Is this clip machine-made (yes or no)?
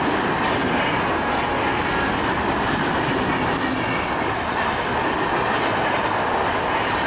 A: no